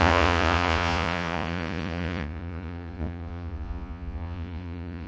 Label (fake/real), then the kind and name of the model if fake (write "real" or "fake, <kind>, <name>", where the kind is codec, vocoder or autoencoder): fake, vocoder, Vocos